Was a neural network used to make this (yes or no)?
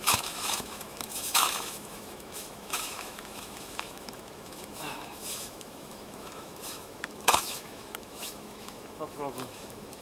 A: yes